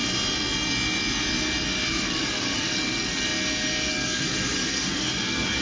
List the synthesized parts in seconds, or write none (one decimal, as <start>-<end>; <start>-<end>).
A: 1.9-3.3; 3.9-5.6